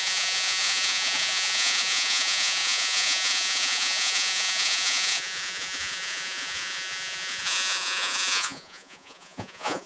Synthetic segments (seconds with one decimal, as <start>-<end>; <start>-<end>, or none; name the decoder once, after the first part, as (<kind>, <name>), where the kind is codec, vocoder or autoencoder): 0.0-9.9 (vocoder, Vocos)